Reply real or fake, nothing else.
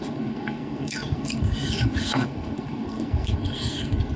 fake